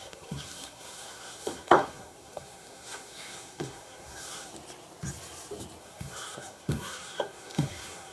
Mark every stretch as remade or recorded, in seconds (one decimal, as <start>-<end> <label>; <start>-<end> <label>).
0.0-4.5 remade; 4.5-5.8 recorded; 5.8-8.1 remade

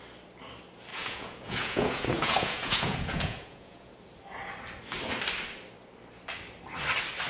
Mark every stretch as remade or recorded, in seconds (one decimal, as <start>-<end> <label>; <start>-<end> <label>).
0.0-0.9 recorded; 0.9-3.9 remade; 3.9-7.3 recorded

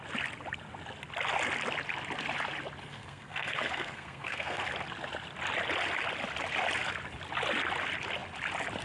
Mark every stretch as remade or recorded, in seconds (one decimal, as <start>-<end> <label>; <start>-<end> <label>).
0.0-2.9 recorded; 2.9-4.6 remade; 4.6-8.8 recorded

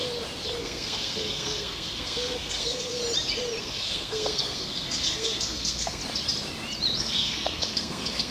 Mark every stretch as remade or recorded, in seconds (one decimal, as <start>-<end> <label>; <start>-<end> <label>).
0.0-0.6 recorded; 0.6-3.0 remade; 3.0-3.6 recorded; 3.6-6.0 remade; 6.0-7.0 recorded; 7.0-8.3 remade

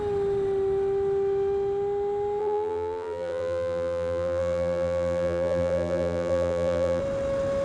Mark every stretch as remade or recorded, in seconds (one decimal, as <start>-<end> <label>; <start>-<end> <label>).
0.0-2.4 recorded; 2.4-7.0 remade; 7.0-7.6 recorded

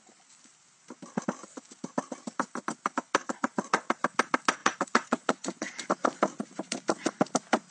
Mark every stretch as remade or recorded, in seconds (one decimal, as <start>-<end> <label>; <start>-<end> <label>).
0.0-3.2 recorded; 3.2-3.8 remade; 3.8-4.6 recorded; 4.6-5.9 remade; 5.9-7.7 recorded

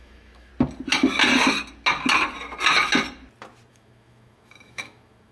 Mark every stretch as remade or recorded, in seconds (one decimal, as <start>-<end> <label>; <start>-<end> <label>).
0.0-0.5 remade; 0.5-3.7 recorded; 3.7-5.3 remade

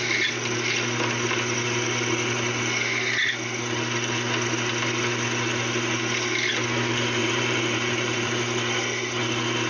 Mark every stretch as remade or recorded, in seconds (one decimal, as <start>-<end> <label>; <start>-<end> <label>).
0.0-7.2 recorded; 7.2-8.3 remade; 8.3-9.7 recorded